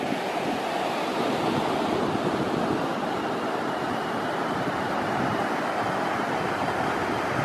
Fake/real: real